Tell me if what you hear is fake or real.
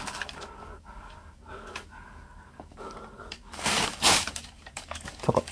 fake